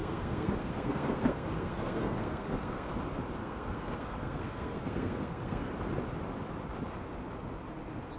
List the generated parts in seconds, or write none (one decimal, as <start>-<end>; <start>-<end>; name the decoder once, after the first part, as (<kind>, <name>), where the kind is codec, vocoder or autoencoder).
0.0-2.9 (codec, SNAC); 3.4-5.7